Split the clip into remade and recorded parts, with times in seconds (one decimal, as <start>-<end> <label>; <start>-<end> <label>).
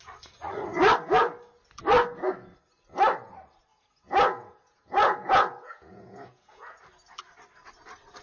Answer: 0.0-3.7 recorded; 3.7-6.8 remade; 6.8-8.2 recorded